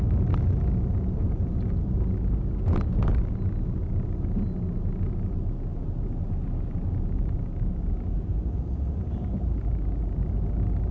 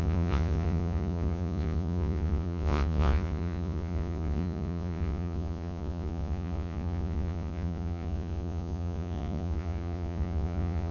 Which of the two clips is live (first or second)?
first